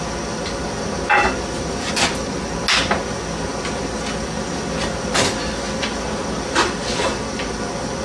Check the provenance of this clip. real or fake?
real